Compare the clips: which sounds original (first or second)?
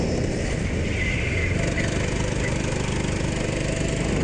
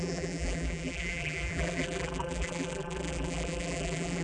first